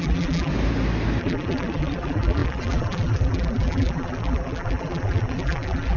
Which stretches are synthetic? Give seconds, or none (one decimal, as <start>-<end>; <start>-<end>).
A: 0.0-0.5; 1.2-6.0

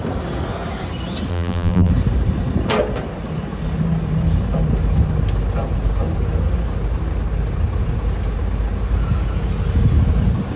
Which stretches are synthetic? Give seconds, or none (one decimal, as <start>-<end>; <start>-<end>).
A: 1.3-1.9

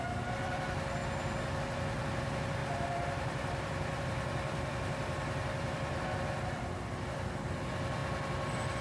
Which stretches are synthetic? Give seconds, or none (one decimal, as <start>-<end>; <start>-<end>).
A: 2.6-6.0

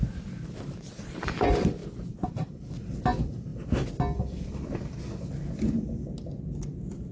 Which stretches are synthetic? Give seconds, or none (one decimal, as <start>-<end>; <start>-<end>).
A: none

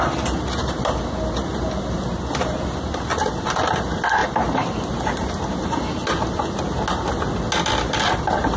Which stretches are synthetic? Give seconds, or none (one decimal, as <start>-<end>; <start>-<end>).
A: 4.2-5.6

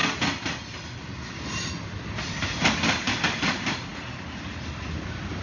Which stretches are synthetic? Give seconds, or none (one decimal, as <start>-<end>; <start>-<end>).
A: none